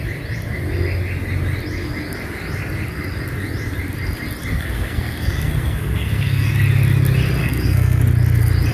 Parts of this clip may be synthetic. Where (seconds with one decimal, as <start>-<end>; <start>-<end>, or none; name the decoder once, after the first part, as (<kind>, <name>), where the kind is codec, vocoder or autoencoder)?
4.5-6.5 (codec, SNAC); 7.4-8.0